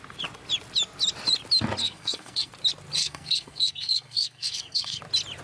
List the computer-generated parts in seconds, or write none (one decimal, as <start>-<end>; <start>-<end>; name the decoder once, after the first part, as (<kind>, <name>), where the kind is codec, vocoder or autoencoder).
1.8-2.5 (codec, SNAC); 3.0-5.0